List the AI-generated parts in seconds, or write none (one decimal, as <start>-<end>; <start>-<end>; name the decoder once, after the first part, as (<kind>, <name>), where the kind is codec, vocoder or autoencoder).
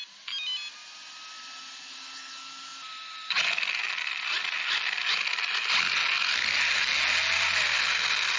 none